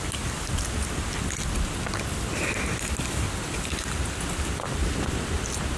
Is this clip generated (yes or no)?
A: no